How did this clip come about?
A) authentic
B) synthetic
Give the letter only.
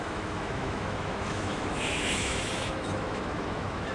B